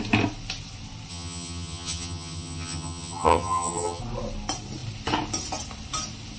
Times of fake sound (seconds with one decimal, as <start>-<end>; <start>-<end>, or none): 1.1-4.0